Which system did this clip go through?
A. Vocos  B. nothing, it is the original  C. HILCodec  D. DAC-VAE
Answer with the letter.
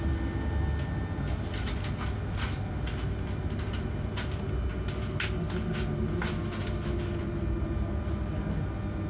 B